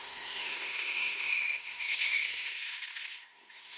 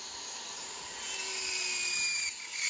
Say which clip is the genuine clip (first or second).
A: second